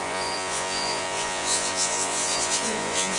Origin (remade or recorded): remade